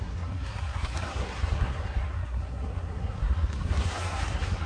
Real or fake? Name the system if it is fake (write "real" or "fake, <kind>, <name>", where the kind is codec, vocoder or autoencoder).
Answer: fake, codec, SNAC